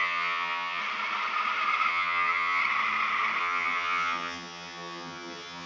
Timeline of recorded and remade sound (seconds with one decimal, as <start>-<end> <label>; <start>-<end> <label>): 0.0-0.8 remade; 0.8-1.9 recorded; 1.9-2.6 remade; 2.6-3.4 recorded; 3.4-5.7 remade